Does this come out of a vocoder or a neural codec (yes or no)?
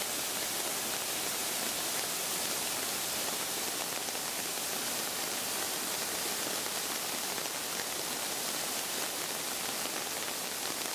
no